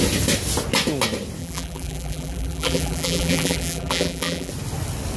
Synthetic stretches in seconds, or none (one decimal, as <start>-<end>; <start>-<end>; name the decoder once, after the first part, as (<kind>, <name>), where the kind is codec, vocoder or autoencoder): 1.4-4.5 (vocoder, BigVGAN v2)